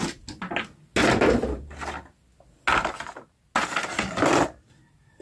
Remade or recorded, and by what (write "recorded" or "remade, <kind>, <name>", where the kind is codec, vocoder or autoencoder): recorded